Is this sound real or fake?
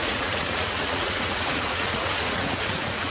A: fake